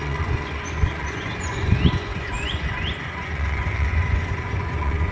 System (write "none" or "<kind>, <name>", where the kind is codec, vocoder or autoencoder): vocoder, Vocos